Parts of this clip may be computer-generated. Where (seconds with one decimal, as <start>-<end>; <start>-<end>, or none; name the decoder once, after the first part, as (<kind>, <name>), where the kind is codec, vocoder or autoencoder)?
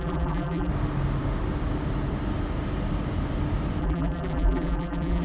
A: 0.0-0.7 (vocoder, BigVGAN v2); 3.8-5.2